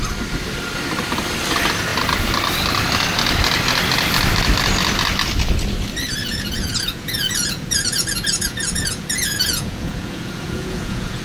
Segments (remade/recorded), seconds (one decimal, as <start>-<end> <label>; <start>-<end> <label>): 0.0-6.2 recorded; 6.2-11.2 remade

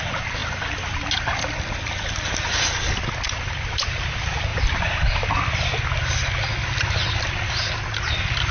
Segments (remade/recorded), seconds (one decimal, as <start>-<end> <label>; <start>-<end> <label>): 0.0-8.5 recorded

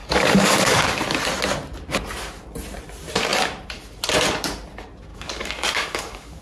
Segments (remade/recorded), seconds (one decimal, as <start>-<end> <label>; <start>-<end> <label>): 0.0-1.0 remade; 1.0-5.1 recorded; 5.1-6.4 remade

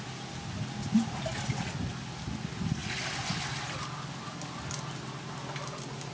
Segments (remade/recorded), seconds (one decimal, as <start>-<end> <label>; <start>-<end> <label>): 0.0-6.1 recorded

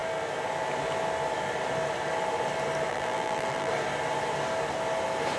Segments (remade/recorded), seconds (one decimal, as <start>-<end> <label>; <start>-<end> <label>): 0.0-2.9 recorded; 2.9-3.7 remade; 3.7-5.4 recorded

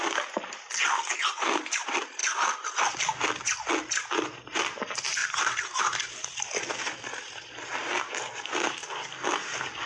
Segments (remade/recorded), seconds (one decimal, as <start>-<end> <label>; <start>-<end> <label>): 0.0-9.9 recorded

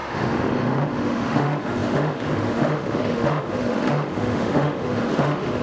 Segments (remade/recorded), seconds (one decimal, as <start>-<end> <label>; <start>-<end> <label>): 0.0-5.6 remade